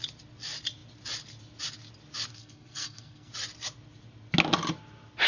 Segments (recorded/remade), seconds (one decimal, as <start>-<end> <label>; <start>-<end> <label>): 0.0-2.3 recorded; 2.3-3.3 remade; 3.3-5.3 recorded